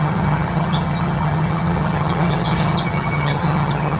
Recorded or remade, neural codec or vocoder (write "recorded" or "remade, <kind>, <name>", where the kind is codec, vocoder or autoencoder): remade, vocoder, HiFi-GAN